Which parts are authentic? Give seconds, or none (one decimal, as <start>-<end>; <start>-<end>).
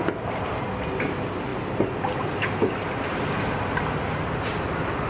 0.0-5.1